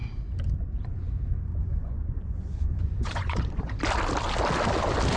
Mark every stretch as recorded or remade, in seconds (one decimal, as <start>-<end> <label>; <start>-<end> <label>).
0.0-1.5 recorded; 1.5-3.8 remade; 3.8-5.2 recorded